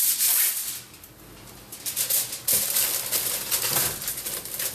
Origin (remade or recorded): recorded